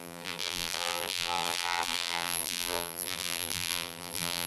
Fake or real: fake